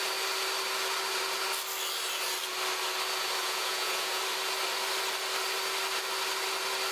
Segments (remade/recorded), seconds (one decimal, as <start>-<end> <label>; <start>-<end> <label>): 0.0-3.4 recorded; 3.4-4.2 remade; 4.2-6.9 recorded